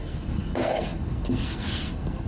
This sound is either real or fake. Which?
fake